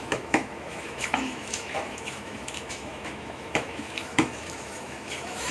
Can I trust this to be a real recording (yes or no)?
no